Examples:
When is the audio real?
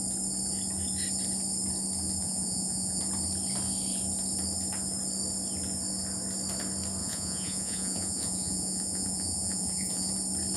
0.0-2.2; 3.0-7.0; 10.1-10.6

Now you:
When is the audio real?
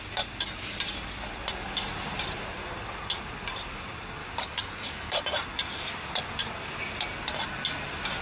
0.0-4.2; 5.2-8.2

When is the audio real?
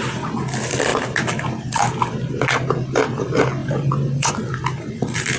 0.0-3.6; 4.3-5.4